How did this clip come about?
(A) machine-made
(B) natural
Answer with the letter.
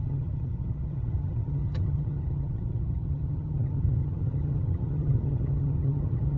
A